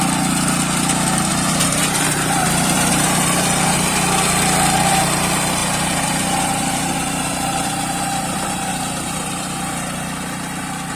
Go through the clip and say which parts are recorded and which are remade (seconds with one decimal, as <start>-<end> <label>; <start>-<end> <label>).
0.0-1.3 recorded; 1.3-4.0 remade; 4.0-5.6 recorded; 5.6-10.0 remade; 10.0-11.0 recorded